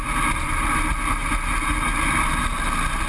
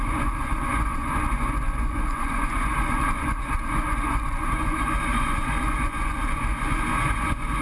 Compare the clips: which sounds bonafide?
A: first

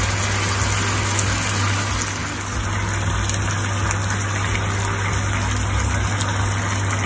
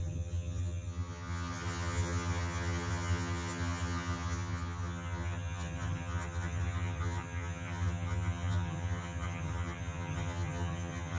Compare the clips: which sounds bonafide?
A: first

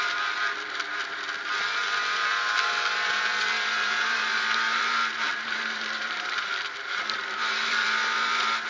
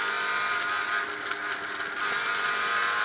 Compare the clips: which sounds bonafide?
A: second